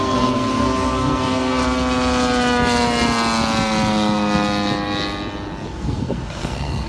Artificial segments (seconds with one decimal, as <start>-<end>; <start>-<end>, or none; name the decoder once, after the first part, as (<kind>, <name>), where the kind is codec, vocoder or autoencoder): 0.0-1.6 (codec, SNAC); 5.7-6.9